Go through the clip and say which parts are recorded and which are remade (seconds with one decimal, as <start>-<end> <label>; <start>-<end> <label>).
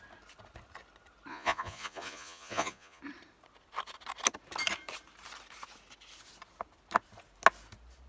0.0-1.3 recorded; 1.3-3.0 remade; 3.0-8.1 recorded